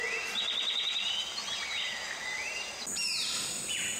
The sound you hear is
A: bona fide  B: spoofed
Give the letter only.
A